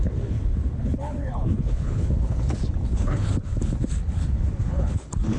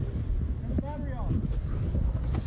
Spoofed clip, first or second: first